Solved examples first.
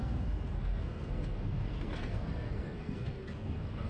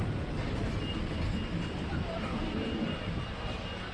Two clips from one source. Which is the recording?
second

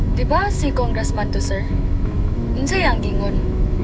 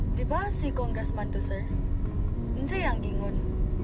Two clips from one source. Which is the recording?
second